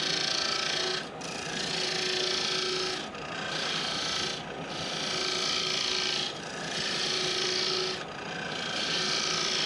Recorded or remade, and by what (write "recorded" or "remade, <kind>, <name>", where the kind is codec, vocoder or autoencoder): recorded